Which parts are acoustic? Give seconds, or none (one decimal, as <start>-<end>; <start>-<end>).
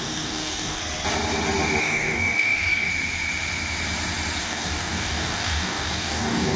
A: 0.8-1.8; 2.9-4.4